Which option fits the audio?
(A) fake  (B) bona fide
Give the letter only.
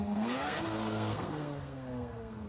A